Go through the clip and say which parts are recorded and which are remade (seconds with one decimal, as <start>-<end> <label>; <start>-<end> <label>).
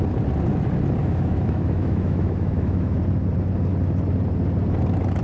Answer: 0.0-1.0 recorded; 1.0-3.0 remade; 3.0-5.2 recorded